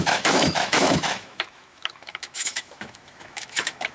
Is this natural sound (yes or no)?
no